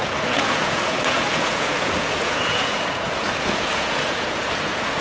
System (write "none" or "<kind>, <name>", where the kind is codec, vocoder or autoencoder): vocoder, Vocos